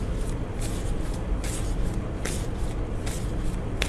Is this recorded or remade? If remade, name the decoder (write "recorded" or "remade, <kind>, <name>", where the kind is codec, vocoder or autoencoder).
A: recorded